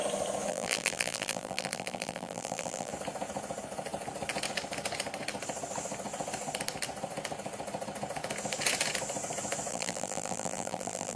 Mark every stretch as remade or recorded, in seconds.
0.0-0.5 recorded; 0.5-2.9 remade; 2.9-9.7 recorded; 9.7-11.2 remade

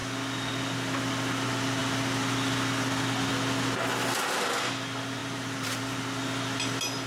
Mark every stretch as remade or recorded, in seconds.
0.0-5.2 recorded; 5.2-5.8 remade; 5.8-7.1 recorded